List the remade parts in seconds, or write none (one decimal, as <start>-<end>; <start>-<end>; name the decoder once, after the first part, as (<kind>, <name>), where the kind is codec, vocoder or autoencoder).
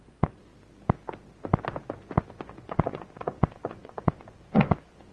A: 0.0-0.5 (vocoder, Vocos); 2.3-5.1